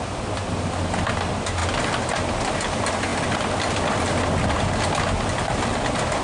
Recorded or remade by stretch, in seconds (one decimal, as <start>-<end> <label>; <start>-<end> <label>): 0.0-6.2 recorded